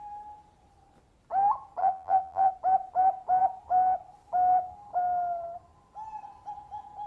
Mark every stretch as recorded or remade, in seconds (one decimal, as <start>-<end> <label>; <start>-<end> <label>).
0.0-1.8 recorded; 1.8-2.5 remade; 2.5-7.1 recorded